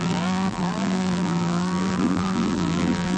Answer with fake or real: fake